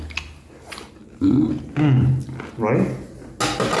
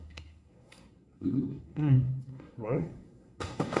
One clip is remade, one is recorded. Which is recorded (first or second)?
first